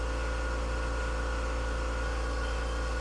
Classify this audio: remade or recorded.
recorded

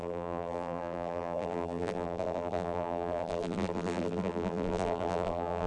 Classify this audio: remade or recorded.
remade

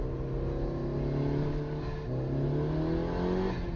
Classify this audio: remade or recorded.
recorded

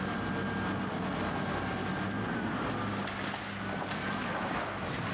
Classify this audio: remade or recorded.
recorded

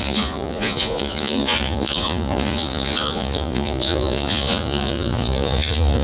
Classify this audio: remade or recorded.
remade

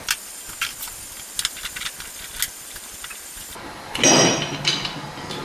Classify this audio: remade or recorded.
recorded